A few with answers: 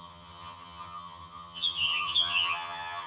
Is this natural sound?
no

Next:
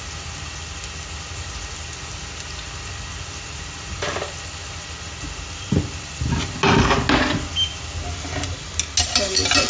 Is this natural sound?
yes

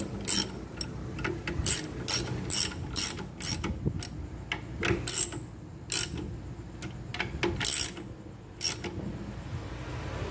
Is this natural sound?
yes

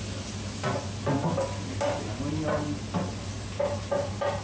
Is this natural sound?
yes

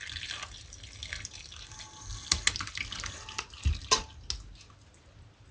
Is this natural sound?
yes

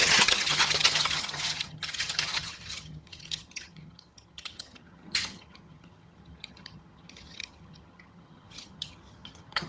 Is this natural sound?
no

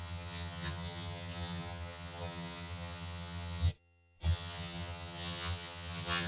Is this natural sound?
no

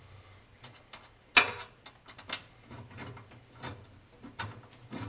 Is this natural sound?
yes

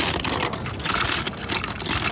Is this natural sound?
yes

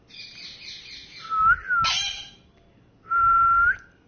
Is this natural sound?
yes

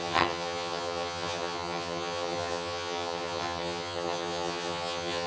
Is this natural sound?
no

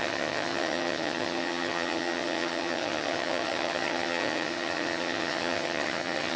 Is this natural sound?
no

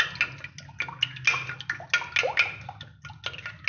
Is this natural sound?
yes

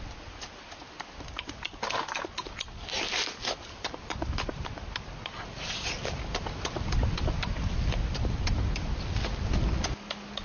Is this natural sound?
yes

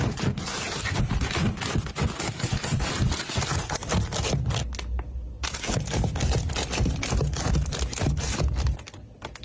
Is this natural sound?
yes